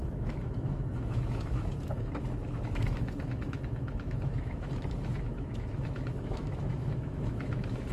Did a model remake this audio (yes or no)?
yes